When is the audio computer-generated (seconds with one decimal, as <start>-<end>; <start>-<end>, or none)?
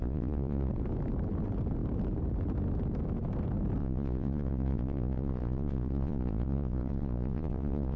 0.0-0.7; 3.8-8.0